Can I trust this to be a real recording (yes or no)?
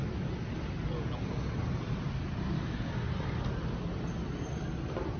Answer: yes